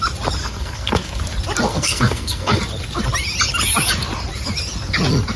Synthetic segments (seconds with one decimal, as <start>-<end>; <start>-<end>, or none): 0.4-1.2; 1.7-2.6